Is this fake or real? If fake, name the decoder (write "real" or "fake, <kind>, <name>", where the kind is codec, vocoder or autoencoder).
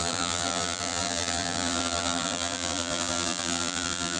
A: fake, vocoder, BigVGAN v2